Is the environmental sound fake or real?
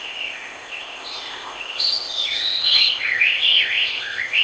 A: fake